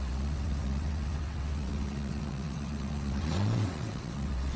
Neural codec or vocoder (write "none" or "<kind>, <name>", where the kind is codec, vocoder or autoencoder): vocoder, WaveNeXt